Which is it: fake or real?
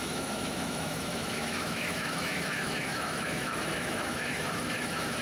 fake